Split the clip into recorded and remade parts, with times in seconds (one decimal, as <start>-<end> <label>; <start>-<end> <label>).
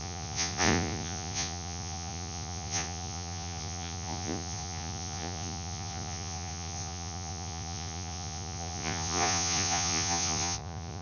0.0-11.0 remade